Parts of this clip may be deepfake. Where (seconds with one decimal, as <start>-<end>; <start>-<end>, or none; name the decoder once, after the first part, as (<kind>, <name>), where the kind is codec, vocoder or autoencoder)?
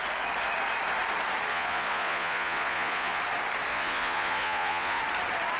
1.5-3.2 (vocoder, Vocos); 3.7-5.0